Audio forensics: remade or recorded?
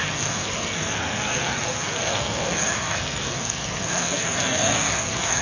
remade